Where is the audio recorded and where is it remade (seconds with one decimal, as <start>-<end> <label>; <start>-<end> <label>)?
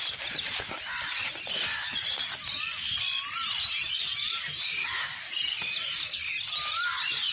0.0-4.8 recorded; 4.8-5.3 remade; 5.3-7.3 recorded